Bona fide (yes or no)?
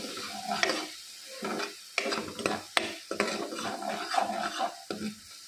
yes